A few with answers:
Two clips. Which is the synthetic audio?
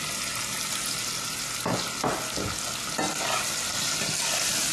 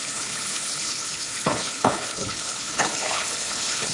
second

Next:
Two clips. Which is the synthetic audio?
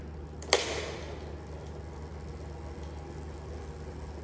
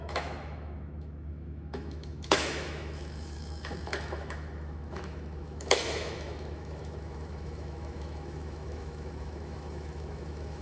second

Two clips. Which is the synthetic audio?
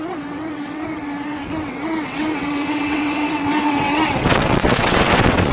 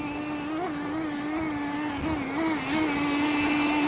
first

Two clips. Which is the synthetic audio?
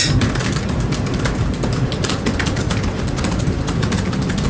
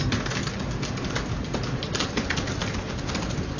first